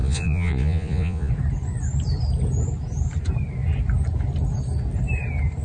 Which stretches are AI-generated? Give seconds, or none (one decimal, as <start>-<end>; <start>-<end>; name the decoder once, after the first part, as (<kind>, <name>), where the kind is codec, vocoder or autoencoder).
0.0-1.3 (vocoder, Vocos)